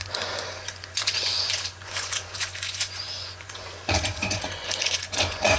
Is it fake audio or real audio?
fake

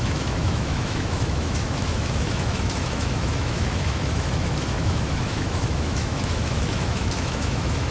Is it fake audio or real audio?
fake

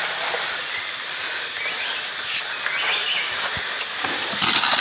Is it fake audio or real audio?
real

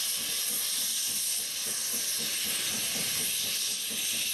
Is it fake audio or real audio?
real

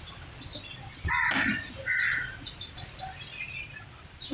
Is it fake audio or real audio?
real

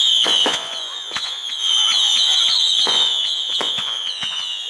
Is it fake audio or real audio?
fake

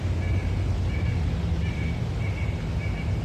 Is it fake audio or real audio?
real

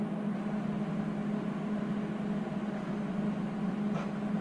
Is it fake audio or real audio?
real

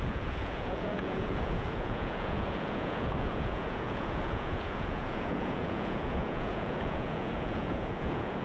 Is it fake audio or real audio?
fake